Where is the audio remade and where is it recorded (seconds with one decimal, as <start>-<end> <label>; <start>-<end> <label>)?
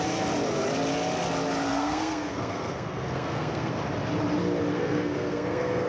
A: 0.0-1.7 recorded; 1.7-3.7 remade; 3.7-4.7 recorded; 4.7-5.9 remade